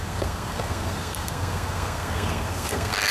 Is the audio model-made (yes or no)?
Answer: yes